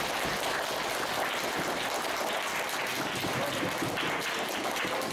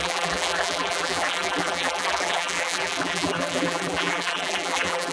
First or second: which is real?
first